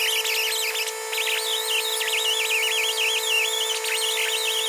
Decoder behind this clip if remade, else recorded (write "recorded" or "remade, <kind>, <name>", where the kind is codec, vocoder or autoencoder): recorded